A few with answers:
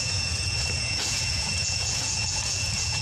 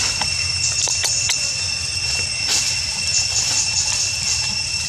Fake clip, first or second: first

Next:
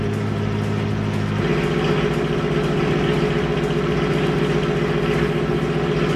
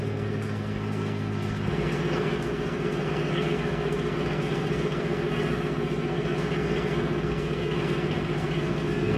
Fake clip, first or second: second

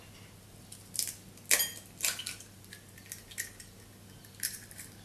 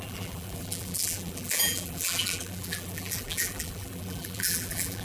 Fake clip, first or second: second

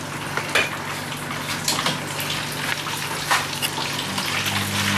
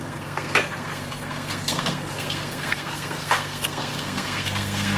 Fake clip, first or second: second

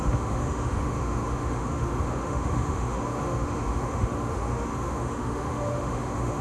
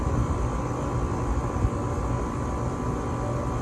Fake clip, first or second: first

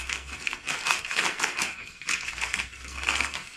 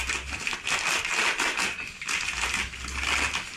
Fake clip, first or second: first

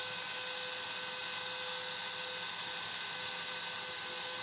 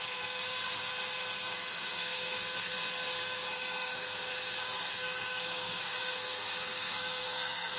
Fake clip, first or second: second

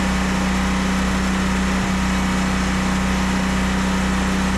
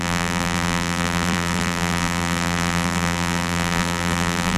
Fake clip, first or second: second